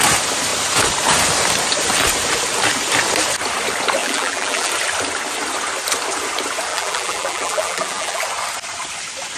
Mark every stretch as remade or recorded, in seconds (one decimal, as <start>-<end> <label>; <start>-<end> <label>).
0.0-4.0 recorded; 4.0-4.7 remade; 4.7-6.7 recorded; 6.7-8.2 remade; 8.2-9.4 recorded